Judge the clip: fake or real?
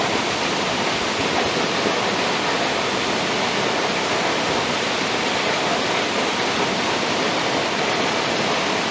real